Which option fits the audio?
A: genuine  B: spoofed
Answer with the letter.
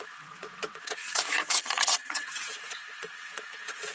B